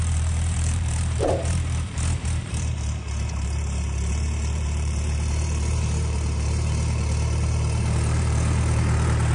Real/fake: fake